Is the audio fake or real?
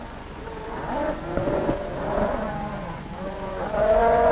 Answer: fake